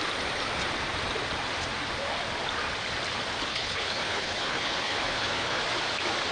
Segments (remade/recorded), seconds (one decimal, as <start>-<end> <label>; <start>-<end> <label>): 0.0-3.5 recorded; 3.5-5.6 remade; 5.6-6.3 recorded